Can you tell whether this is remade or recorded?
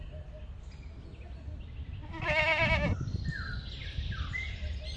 recorded